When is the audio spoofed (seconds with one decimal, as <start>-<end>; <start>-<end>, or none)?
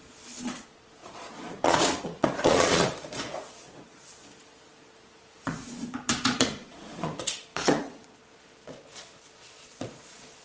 0.0-10.4